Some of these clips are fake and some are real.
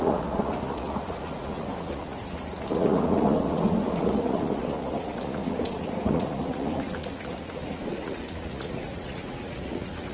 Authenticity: fake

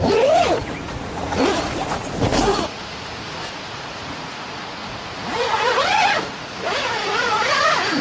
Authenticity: fake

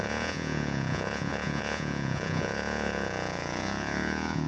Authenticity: fake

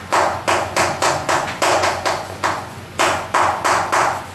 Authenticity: fake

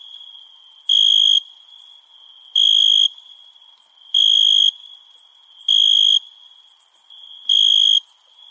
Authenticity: real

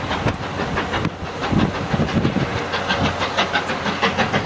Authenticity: real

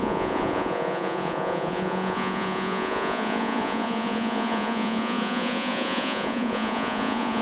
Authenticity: fake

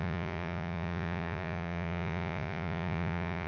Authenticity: fake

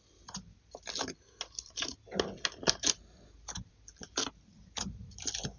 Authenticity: real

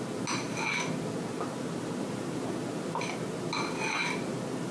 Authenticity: real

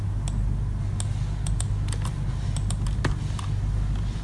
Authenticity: real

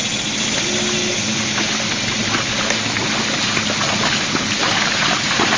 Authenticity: real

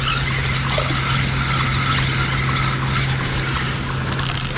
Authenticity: real